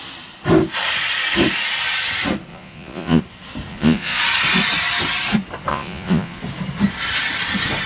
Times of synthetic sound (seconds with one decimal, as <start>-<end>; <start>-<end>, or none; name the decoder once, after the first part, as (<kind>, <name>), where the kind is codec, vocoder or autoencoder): 2.5-3.2 (vocoder, Vocos); 3.7-4.2; 5.7-6.4